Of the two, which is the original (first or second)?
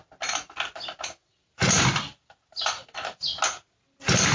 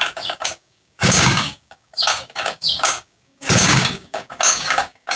first